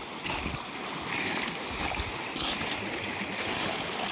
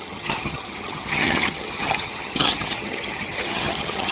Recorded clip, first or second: first